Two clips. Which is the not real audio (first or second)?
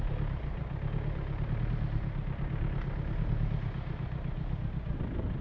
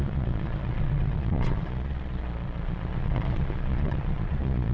second